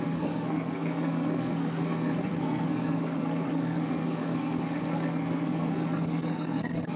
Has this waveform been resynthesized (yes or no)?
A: yes